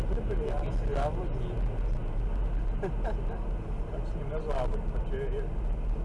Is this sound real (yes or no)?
yes